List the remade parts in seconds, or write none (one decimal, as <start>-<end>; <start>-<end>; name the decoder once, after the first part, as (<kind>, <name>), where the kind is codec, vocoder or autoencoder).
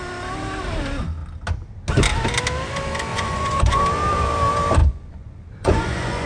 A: 3.1-3.8 (vocoder, Vocos); 4.8-6.3